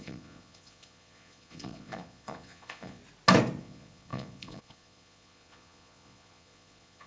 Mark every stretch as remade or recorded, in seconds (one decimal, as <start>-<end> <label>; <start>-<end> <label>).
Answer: 0.0-3.0 remade; 3.0-3.6 recorded; 3.6-7.1 remade